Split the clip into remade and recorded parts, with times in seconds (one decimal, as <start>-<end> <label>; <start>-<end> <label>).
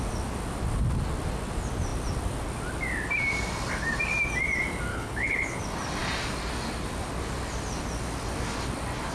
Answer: 0.0-4.9 recorded; 4.9-5.6 remade; 5.6-9.1 recorded